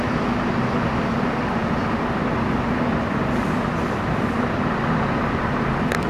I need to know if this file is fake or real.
real